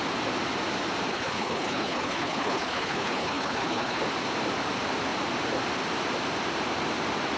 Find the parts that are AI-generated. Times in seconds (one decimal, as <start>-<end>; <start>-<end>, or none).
1.1-4.0